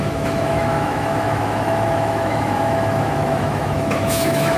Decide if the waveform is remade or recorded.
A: remade